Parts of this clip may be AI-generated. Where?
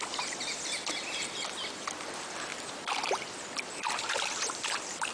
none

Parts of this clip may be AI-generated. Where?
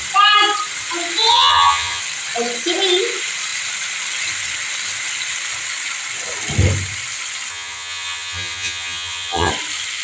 1.3-2.0 (vocoder, HiFi-GAN); 7.5-9.5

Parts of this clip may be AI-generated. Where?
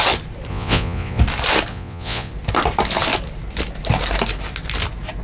0.5-1.2 (vocoder, Vocos); 1.7-2.3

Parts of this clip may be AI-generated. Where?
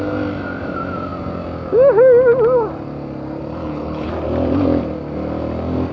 3.6-4.1 (codec, HILCodec)